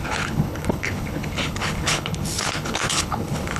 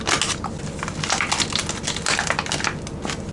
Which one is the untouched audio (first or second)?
second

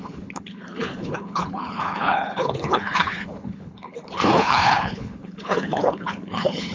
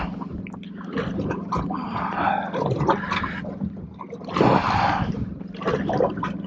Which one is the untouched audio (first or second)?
second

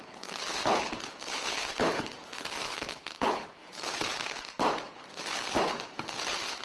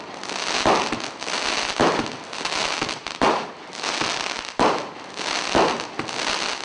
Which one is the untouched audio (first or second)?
second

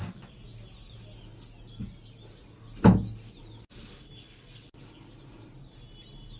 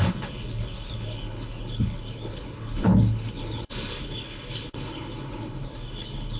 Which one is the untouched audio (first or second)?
first